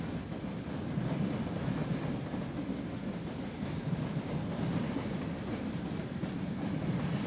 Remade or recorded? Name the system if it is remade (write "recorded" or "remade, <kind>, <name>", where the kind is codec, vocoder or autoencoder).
recorded